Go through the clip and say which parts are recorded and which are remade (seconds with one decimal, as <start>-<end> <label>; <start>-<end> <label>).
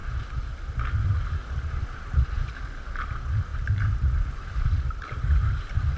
0.0-1.4 recorded; 1.4-2.2 remade; 2.2-3.5 recorded; 3.5-6.0 remade